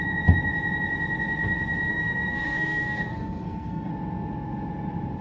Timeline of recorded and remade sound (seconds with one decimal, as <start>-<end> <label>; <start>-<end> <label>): 0.0-1.9 recorded; 1.9-3.9 remade; 3.9-5.2 recorded